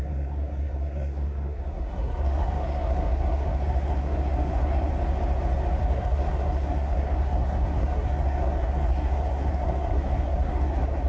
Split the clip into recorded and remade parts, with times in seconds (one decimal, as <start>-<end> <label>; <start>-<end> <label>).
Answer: 0.0-4.9 remade; 4.9-5.8 recorded; 5.8-11.1 remade